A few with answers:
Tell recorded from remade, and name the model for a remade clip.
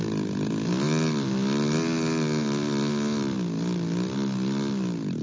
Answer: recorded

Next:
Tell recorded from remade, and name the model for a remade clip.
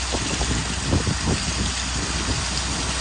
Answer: recorded